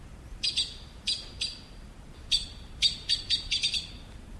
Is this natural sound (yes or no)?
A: no